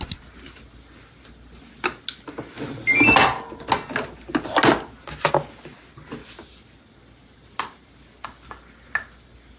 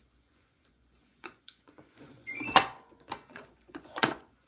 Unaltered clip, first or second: first